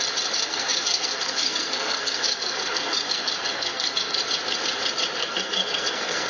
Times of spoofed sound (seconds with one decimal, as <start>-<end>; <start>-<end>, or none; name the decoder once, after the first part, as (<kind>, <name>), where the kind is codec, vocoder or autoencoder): 0.4-4.2 (codec, SNAC); 5.2-6.3